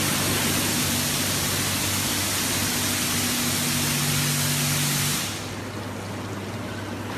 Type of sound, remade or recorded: recorded